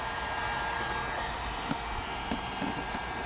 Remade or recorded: recorded